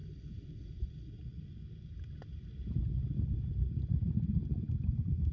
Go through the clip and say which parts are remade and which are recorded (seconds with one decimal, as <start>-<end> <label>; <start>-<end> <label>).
0.0-5.3 recorded